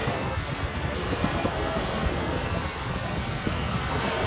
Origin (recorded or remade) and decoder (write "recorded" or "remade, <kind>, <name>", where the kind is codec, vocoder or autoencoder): remade, codec, SNAC